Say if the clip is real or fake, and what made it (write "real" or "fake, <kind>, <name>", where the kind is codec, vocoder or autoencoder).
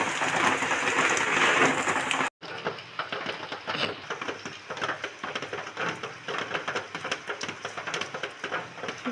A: real